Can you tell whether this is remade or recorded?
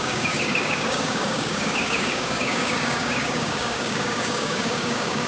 remade